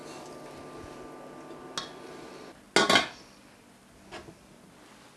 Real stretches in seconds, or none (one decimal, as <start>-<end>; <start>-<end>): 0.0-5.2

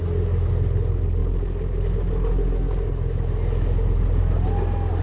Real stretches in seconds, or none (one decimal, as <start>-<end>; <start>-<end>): 0.0-5.0

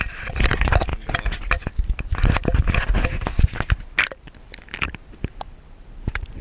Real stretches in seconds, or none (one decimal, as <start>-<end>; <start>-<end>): 0.9-4.3